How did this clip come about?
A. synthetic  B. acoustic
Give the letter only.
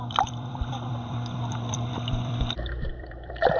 A